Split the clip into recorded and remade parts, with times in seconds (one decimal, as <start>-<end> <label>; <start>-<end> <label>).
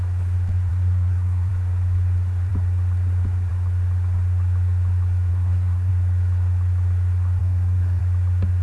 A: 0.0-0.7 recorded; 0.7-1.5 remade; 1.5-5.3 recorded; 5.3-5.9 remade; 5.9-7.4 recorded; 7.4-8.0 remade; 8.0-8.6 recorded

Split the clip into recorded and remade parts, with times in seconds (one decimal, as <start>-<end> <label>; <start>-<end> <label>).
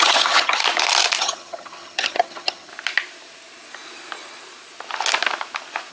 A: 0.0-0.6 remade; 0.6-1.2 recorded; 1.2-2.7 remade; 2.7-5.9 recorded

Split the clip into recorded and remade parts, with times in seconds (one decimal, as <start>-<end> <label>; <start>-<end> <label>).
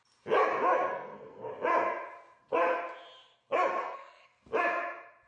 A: 0.0-0.9 recorded; 0.9-1.5 remade; 1.5-3.7 recorded; 3.7-4.4 remade; 4.4-5.3 recorded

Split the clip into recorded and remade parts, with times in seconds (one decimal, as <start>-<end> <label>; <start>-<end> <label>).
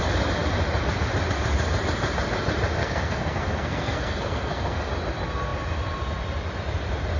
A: 0.0-2.8 recorded; 2.8-4.9 remade; 4.9-7.2 recorded